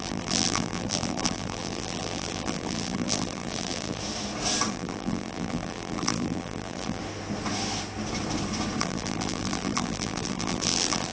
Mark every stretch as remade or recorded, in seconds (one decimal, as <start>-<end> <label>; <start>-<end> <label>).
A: 0.0-4.0 remade; 4.0-4.7 recorded; 4.7-7.0 remade; 7.0-8.8 recorded; 8.8-11.1 remade